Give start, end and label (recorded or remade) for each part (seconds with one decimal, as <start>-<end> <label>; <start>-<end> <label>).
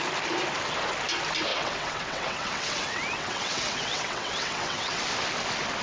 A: 0.0-1.5 recorded; 1.5-5.0 remade; 5.0-5.8 recorded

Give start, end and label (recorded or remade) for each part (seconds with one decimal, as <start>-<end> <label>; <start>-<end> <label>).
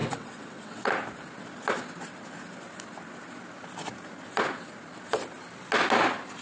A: 0.0-0.9 remade; 0.9-6.4 recorded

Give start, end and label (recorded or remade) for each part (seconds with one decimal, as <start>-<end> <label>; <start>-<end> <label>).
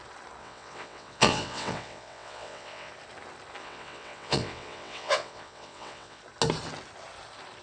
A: 0.0-0.4 recorded; 0.4-2.9 remade; 2.9-3.6 recorded; 3.6-6.2 remade; 6.2-7.6 recorded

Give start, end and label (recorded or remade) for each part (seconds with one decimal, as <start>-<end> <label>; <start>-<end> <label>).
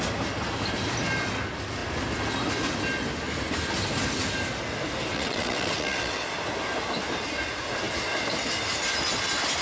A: 0.0-5.1 recorded; 5.1-6.2 remade; 6.2-9.6 recorded